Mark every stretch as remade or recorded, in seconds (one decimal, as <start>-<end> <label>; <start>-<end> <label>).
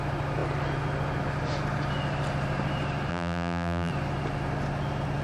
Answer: 0.0-3.1 recorded; 3.1-3.9 remade; 3.9-5.2 recorded